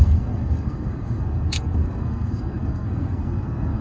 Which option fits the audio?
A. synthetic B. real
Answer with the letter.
A